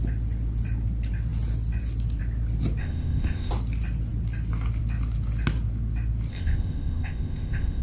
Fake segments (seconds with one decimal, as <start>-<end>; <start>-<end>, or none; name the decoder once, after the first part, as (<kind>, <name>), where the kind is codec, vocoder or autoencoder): 2.8-3.5 (codec, ZipCodec); 6.3-7.8